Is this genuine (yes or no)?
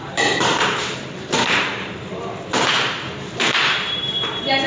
no